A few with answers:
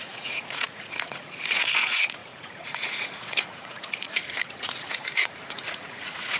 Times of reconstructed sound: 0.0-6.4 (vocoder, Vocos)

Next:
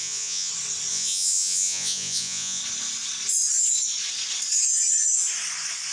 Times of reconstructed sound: 0.0-0.5 (vocoder, Vocos); 0.9-2.6

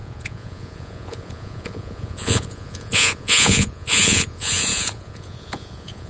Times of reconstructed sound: 0.0-6.1 (vocoder, Vocos)

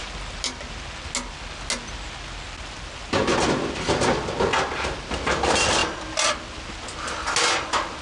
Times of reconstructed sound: none